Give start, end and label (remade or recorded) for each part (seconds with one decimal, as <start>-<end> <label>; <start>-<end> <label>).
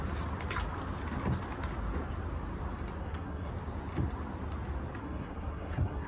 0.0-3.0 recorded; 3.0-3.5 remade; 3.5-5.0 recorded; 5.0-6.1 remade